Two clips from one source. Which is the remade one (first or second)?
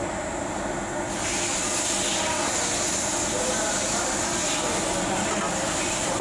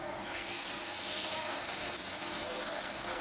second